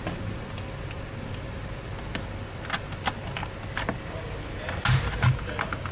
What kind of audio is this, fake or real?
real